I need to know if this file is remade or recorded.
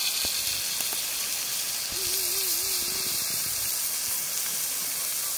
recorded